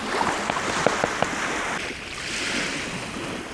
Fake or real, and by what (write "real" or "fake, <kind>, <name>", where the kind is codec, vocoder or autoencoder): real